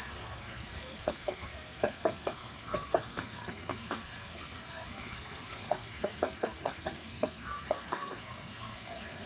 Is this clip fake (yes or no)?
yes